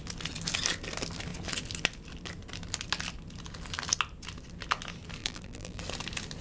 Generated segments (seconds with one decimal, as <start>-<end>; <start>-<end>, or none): 5.2-5.8